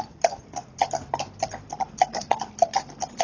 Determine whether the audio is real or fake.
real